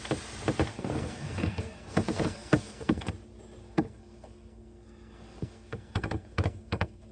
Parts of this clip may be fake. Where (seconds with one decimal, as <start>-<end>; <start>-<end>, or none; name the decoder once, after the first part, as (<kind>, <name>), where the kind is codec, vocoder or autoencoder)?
0.7-3.1 (codec, SNAC); 3.6-7.1